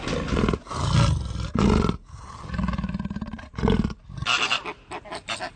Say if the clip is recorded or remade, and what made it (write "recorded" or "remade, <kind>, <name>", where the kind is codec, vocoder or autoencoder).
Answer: recorded